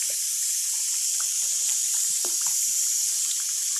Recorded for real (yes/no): no